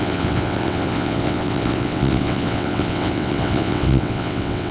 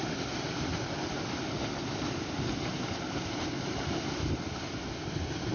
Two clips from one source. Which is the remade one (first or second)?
first